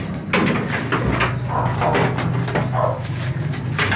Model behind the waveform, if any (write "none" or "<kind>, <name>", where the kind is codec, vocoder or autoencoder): none